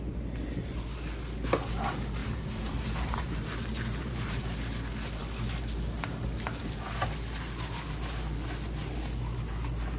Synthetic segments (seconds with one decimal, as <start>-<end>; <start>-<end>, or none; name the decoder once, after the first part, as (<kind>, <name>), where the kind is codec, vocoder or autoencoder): 2.2-4.4 (vocoder, BigVGAN v2)